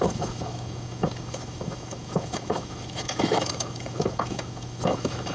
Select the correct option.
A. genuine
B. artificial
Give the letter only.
B